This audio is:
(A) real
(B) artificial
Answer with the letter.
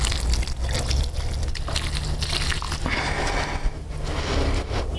A